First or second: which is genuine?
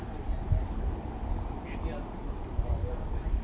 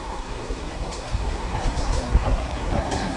first